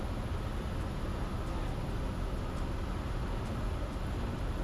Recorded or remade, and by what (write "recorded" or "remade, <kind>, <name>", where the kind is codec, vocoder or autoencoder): recorded